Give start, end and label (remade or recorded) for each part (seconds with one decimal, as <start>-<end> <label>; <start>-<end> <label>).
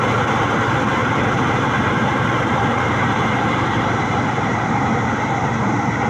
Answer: 0.0-1.0 recorded; 1.0-4.7 remade; 4.7-6.1 recorded